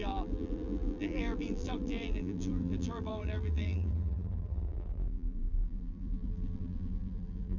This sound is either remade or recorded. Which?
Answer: remade